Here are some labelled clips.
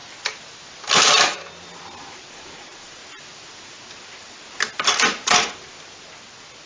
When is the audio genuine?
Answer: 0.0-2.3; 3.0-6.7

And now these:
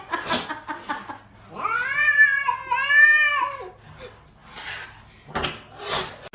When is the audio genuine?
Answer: 0.0-6.3

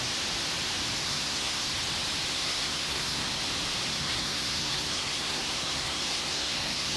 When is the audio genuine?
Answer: 0.0-1.0; 1.6-2.3; 3.4-3.9

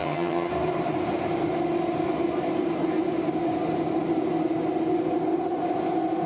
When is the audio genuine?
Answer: 0.5-6.3

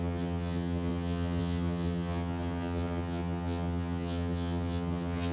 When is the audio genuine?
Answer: none

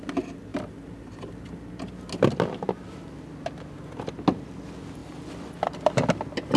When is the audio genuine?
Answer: 0.0-0.5; 1.7-6.6